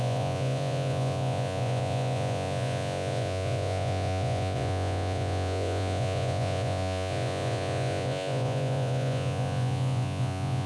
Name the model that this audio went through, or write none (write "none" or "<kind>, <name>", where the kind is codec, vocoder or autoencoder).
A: vocoder, Vocos